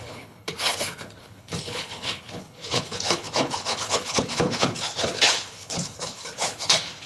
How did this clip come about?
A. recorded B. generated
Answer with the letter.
B